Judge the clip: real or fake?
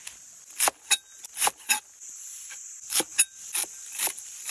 real